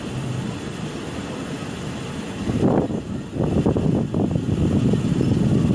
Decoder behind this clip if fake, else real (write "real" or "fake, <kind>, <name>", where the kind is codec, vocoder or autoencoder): real